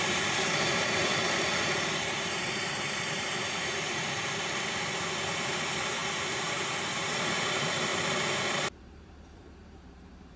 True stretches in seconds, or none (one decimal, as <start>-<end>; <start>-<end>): 1.1-1.9; 7.9-8.5